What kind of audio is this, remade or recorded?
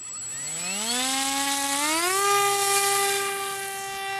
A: recorded